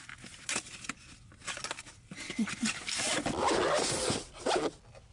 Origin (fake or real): real